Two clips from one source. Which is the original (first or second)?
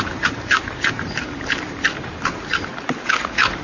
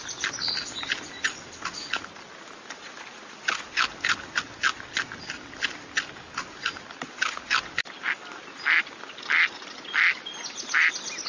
second